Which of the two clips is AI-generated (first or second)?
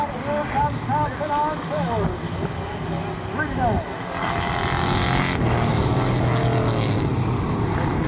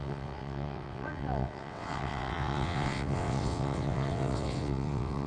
second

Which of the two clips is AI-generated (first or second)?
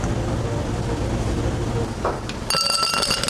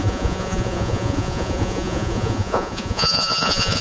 second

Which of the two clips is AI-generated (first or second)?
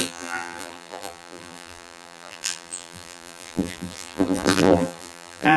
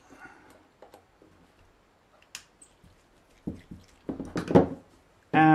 first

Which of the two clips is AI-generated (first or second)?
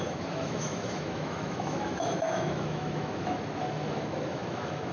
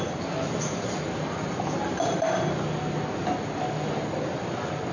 first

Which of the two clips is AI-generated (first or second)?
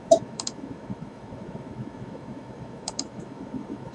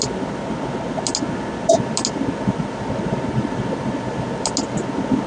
first